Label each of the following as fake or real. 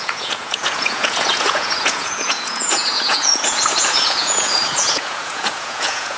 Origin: fake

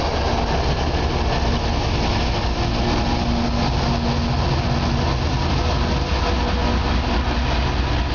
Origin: real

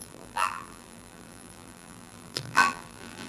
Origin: fake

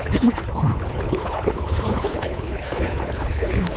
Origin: fake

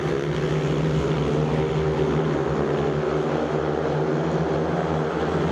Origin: real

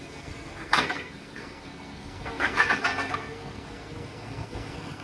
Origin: fake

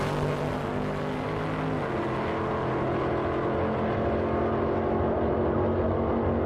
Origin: real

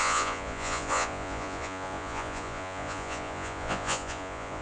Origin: fake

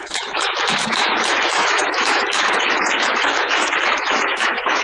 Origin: fake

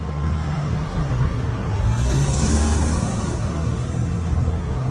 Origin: fake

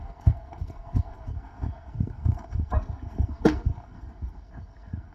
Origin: fake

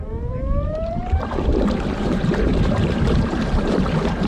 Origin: fake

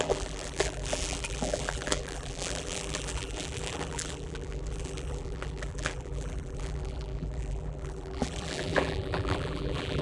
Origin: fake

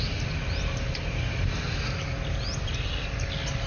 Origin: real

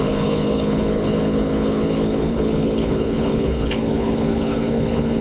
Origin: fake